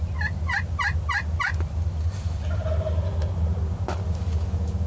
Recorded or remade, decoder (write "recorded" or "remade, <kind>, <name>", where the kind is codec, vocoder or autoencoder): recorded